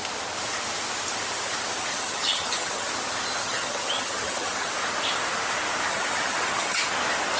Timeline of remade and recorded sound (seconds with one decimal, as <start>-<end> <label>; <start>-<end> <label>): 0.0-1.9 recorded; 1.9-2.9 remade; 2.9-3.4 recorded; 3.4-4.7 remade; 4.7-5.9 recorded; 5.9-6.8 remade; 6.8-7.4 recorded